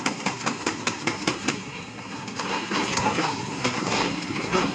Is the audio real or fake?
fake